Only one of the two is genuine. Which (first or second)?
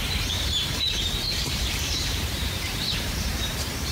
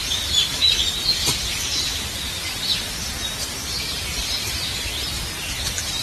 second